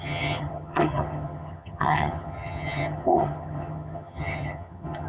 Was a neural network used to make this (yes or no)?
yes